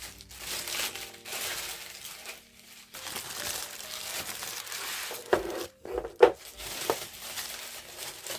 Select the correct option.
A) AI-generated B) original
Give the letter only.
B